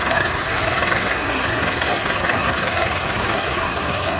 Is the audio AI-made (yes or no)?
yes